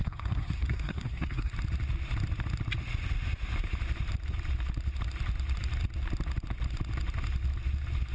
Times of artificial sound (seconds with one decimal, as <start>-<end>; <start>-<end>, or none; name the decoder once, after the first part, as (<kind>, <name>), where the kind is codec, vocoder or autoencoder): 0.0-1.5 (codec, SNAC)